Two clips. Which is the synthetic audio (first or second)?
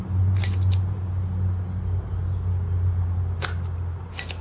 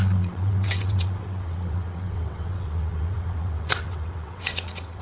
second